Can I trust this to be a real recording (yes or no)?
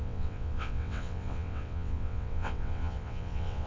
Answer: no